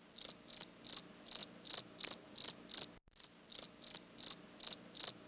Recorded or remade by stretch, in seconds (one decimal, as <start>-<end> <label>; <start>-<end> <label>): 0.0-5.3 recorded